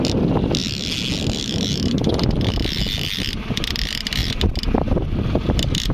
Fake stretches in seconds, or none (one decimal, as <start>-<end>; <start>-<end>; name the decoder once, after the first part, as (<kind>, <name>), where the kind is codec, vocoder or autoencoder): none